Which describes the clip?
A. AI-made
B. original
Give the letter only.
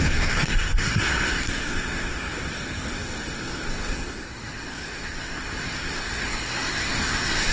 A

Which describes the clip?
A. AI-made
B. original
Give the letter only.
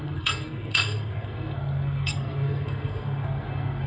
A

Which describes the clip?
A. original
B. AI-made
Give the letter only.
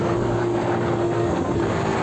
B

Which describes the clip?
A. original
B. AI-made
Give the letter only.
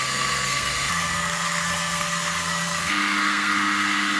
B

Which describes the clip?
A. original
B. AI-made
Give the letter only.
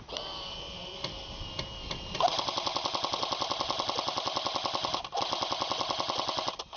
A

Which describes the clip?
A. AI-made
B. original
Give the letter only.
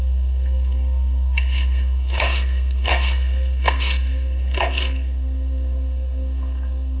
A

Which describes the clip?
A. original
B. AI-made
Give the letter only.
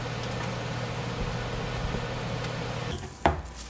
A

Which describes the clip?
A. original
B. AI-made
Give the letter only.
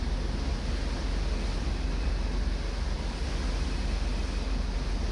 A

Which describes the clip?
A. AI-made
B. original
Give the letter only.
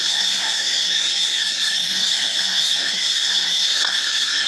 A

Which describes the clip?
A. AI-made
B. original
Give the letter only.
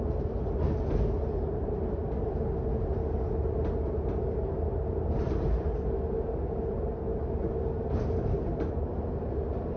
B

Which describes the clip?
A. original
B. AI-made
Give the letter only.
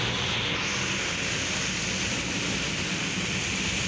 A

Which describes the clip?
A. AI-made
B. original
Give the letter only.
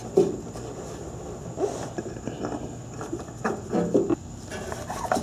B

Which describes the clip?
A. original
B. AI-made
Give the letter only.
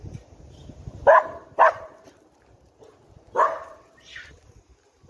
A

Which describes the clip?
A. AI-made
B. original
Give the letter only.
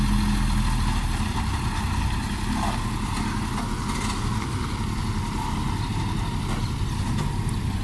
B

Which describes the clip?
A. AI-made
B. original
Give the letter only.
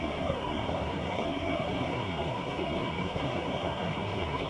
A